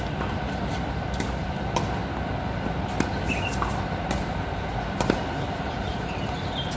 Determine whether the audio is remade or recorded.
recorded